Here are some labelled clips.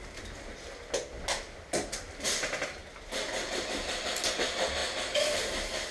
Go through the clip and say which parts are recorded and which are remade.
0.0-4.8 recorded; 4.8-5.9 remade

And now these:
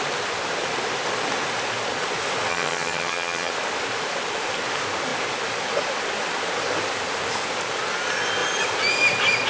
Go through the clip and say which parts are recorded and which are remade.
0.0-2.5 recorded; 2.5-3.5 remade; 3.5-9.5 recorded

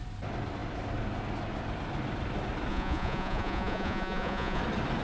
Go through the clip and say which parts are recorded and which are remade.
0.0-2.7 recorded; 2.7-4.6 remade; 4.6-5.0 recorded

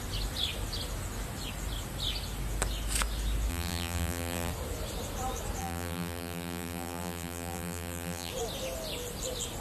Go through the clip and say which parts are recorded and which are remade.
0.0-3.5 recorded; 3.5-4.5 remade; 4.5-5.6 recorded; 5.6-8.3 remade; 8.3-9.6 recorded

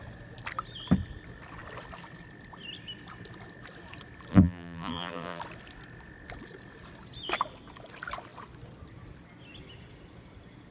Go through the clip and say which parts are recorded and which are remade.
0.0-4.3 recorded; 4.3-5.4 remade; 5.4-10.7 recorded

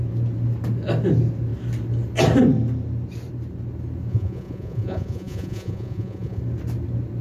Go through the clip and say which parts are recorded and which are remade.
0.0-4.1 recorded; 4.1-6.4 remade; 6.4-7.2 recorded